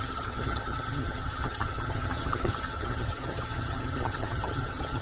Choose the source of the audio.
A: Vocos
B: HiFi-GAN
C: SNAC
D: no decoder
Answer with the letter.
B